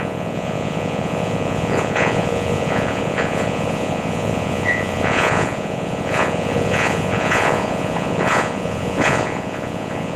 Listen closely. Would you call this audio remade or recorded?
remade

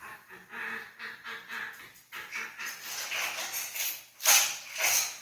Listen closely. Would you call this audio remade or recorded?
recorded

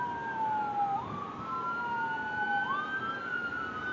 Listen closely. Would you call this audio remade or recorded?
recorded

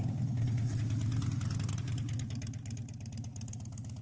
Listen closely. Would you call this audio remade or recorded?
recorded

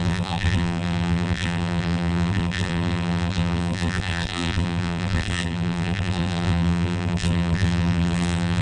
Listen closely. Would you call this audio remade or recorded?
remade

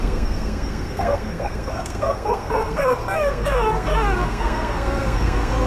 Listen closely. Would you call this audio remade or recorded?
remade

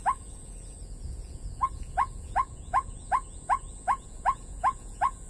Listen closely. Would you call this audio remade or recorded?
remade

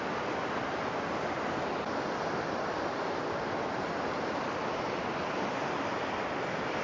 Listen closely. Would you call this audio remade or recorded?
recorded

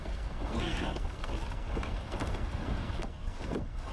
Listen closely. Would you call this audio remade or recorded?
remade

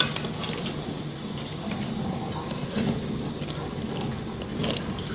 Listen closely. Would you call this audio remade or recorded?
recorded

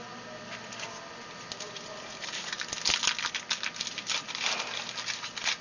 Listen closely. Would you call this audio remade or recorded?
recorded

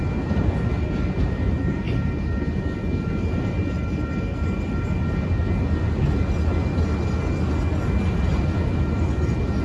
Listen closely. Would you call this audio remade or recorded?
recorded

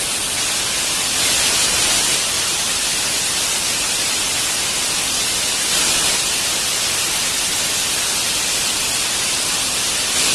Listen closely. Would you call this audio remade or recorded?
remade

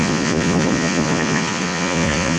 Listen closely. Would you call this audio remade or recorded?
remade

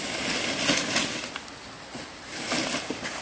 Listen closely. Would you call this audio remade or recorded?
recorded